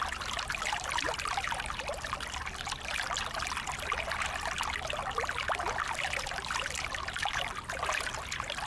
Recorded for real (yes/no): yes